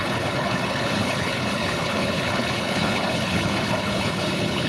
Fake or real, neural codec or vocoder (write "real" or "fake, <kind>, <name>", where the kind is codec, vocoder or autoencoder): fake, codec, HILCodec